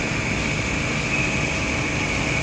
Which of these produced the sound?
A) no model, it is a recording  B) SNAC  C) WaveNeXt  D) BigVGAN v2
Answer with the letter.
A